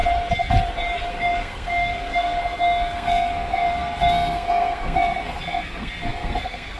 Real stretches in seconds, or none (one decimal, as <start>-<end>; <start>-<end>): 0.0-1.1